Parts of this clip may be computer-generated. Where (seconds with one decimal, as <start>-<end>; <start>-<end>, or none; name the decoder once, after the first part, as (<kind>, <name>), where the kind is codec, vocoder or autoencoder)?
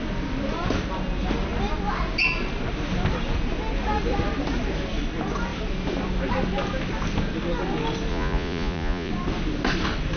8.1-9.1 (vocoder, Vocos)